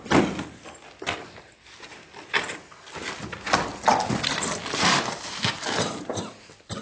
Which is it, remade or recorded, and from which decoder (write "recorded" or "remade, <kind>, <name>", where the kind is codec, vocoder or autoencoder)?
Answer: recorded